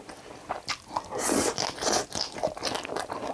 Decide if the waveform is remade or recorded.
recorded